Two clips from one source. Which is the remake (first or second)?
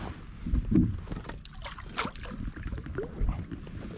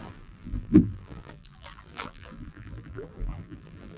second